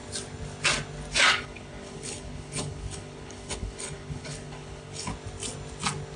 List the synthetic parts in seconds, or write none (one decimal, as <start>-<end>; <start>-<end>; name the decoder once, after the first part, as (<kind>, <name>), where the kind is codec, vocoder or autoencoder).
1.3-5.1 (codec, HILCodec)